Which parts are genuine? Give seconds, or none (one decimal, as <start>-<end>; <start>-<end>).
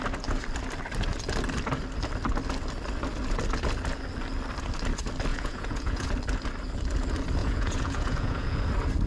0.0-5.3; 6.1-7.4; 8.6-9.1